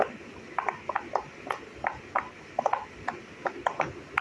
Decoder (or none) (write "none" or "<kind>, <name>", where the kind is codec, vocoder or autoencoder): none